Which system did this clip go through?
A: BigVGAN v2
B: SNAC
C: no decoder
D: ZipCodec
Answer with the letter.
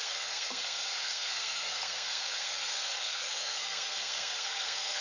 B